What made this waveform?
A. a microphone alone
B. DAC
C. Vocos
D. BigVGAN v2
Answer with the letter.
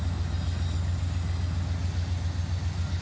A